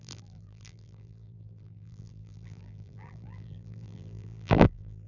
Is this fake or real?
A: fake